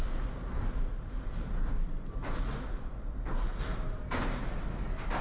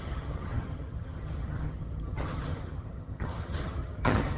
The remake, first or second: second